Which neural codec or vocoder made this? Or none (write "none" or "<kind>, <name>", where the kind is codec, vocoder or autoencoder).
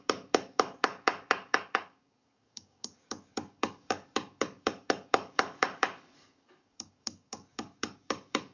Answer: codec, DAC